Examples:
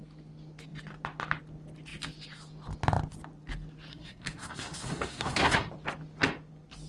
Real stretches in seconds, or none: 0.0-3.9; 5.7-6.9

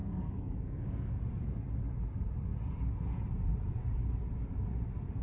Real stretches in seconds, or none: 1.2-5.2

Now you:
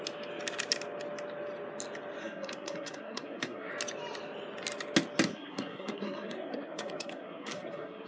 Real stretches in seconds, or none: 0.0-2.2; 3.7-5.3